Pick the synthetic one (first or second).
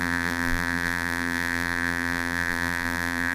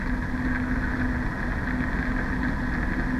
first